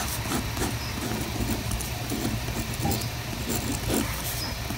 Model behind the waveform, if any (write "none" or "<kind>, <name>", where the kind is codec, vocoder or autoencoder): none